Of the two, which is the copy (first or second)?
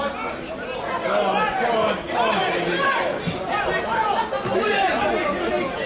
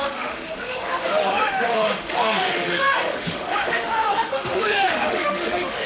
second